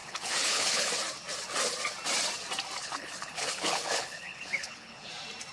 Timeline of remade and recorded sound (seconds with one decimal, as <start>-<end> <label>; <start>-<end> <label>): 0.0-0.9 remade; 0.9-2.8 recorded; 2.8-5.1 remade; 5.1-5.5 recorded